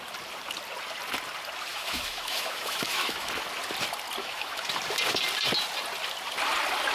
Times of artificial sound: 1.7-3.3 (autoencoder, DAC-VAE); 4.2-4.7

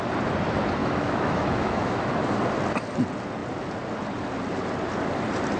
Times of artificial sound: 0.8-2.1 (autoencoder, DAC-VAE)

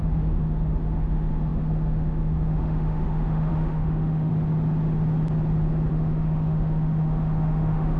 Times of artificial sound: 0.0-4.3 (autoencoder, DAC-VAE); 5.9-8.0

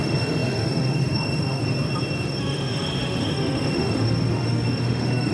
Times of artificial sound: 0.0-1.6 (autoencoder, DAC-VAE); 2.4-5.3